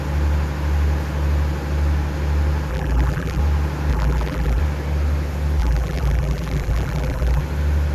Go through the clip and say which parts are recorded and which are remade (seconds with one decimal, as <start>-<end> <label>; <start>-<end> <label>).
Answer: 0.0-2.7 recorded; 2.7-3.4 remade; 3.4-3.9 recorded; 3.9-4.6 remade; 4.6-5.6 recorded; 5.6-7.4 remade; 7.4-7.9 recorded